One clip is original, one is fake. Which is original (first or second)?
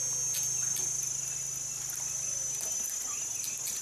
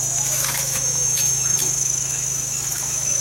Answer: first